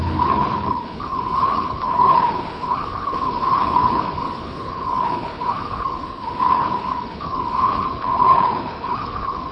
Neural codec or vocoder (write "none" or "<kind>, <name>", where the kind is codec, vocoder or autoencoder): codec, HILCodec